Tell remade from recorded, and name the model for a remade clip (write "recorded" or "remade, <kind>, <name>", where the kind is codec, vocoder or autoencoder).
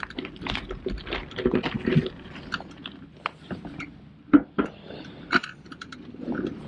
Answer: recorded